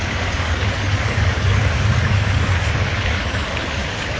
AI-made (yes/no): yes